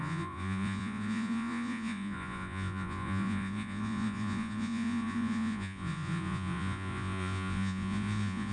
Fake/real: fake